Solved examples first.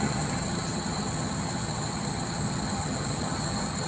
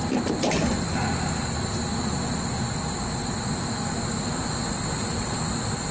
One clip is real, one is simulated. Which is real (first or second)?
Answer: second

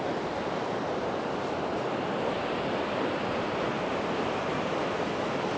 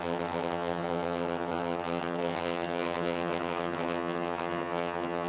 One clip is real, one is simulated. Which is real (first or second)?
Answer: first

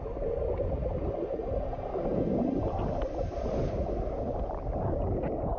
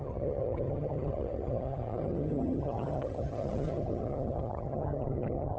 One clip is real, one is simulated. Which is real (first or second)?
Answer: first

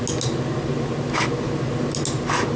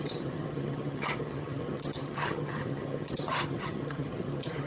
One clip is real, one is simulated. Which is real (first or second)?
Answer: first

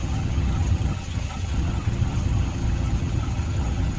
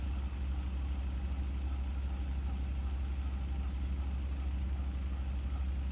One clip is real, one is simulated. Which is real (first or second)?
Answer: second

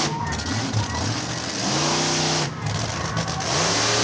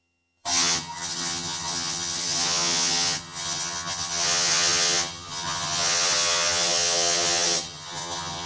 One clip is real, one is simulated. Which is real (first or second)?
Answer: first